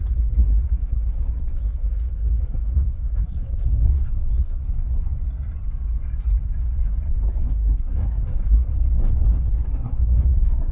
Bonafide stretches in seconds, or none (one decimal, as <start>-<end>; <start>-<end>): 4.6-7.3; 8.7-9.5